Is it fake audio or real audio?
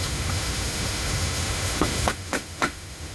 fake